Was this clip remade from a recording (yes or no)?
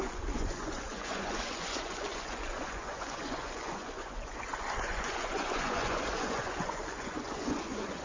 yes